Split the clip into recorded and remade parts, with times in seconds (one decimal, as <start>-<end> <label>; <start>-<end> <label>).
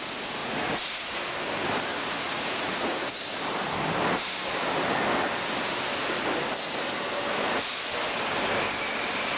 0.0-0.4 recorded; 0.4-1.3 remade; 1.3-1.9 recorded; 1.9-3.1 remade; 3.1-9.4 recorded